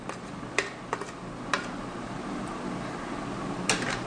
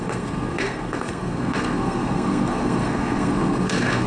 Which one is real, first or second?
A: first